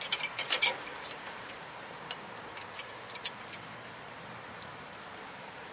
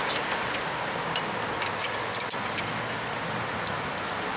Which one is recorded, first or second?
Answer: second